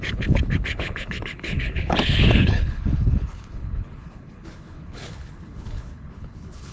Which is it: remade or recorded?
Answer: remade